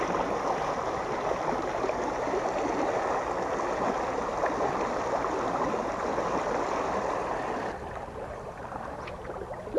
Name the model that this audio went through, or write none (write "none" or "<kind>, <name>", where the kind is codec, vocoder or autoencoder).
none